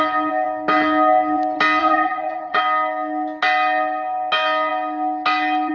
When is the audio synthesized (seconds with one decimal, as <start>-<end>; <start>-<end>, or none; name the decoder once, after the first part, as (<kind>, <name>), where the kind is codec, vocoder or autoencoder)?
1.8-2.6 (vocoder, Vocos)